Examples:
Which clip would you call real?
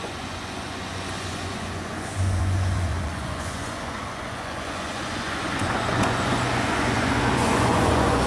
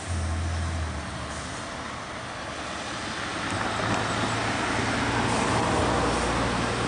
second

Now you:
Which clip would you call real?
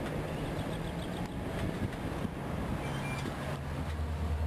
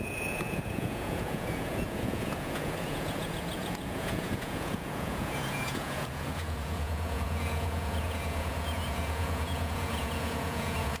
first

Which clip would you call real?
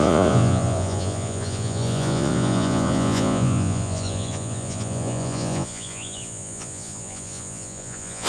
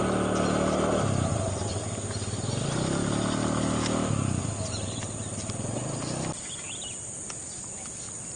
second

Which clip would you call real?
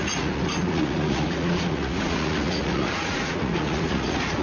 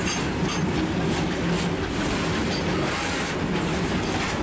second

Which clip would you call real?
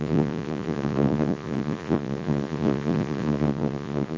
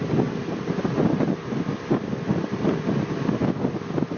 second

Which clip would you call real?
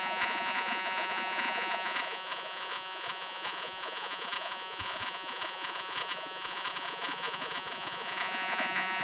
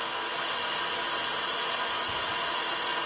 second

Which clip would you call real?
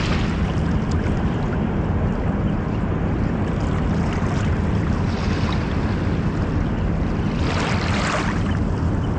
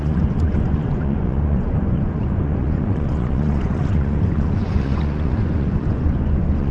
first